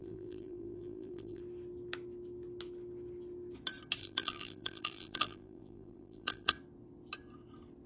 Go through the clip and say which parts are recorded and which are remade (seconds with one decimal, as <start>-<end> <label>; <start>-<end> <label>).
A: 0.0-1.4 remade; 1.4-4.0 recorded; 4.0-6.5 remade; 6.5-7.9 recorded